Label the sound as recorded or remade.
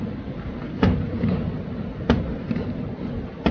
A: recorded